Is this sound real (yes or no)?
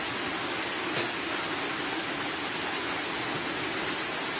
yes